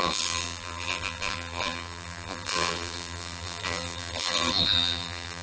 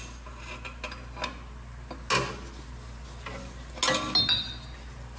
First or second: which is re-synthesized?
first